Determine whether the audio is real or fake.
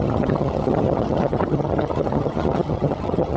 fake